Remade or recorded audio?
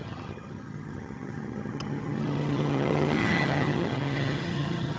remade